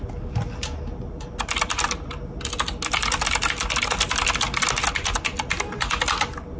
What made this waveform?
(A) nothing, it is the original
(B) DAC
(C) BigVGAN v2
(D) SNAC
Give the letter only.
A